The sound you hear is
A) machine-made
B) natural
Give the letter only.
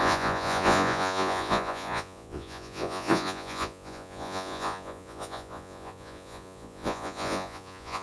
A